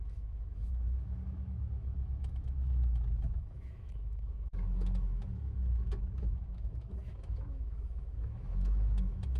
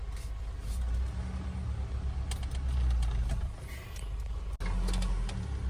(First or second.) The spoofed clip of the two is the first